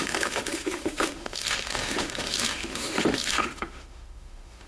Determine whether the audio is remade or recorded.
remade